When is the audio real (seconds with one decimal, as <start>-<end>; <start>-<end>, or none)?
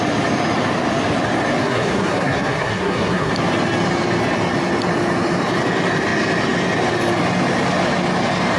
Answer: 0.0-1.6; 3.3-8.6